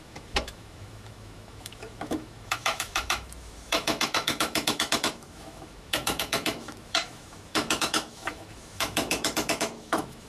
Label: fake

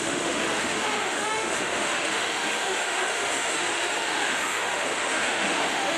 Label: fake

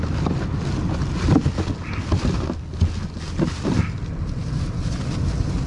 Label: real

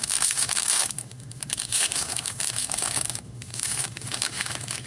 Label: fake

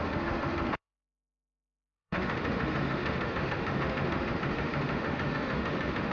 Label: fake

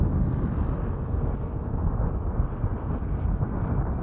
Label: real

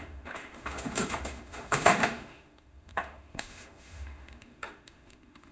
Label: fake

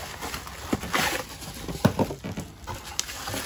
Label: real